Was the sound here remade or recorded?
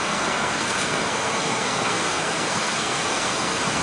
remade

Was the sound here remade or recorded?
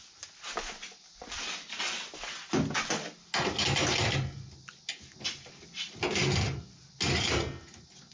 recorded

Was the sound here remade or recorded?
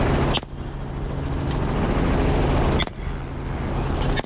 recorded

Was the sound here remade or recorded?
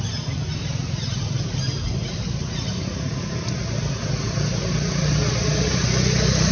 recorded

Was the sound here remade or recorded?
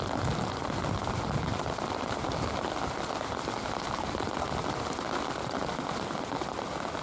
recorded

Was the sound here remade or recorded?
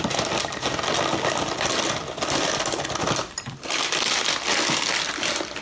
recorded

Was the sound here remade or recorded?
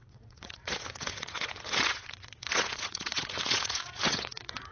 remade